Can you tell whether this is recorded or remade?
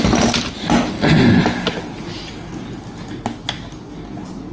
recorded